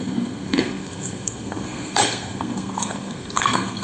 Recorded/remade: remade